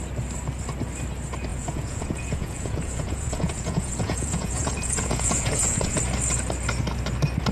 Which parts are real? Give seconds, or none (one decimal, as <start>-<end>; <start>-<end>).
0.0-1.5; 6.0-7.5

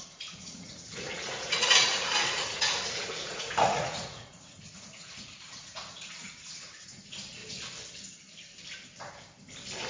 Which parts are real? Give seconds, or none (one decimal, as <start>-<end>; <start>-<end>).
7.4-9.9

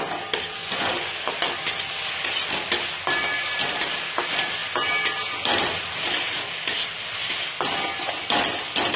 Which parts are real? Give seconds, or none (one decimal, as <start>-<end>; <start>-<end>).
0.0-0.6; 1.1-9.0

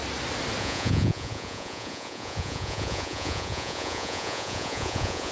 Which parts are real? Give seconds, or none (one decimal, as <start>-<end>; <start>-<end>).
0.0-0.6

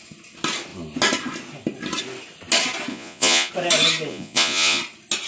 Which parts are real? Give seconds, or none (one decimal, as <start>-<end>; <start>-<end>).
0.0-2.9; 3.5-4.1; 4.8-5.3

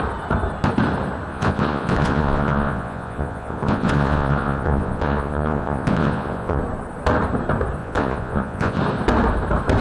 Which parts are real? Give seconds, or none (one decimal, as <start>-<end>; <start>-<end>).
0.0-1.3; 6.6-7.8; 8.8-9.8